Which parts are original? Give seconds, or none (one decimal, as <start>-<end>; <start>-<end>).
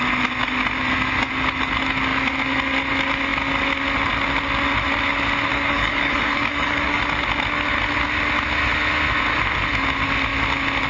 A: 0.0-5.5; 7.0-10.9